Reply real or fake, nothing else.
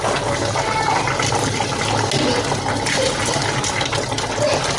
real